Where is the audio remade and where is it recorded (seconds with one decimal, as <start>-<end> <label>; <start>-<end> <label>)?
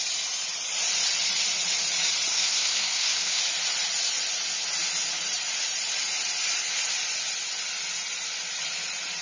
0.0-2.3 recorded; 2.3-3.4 remade; 3.4-9.2 recorded